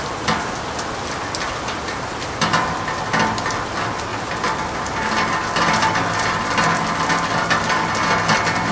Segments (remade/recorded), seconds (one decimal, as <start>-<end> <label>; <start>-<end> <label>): 0.0-8.7 recorded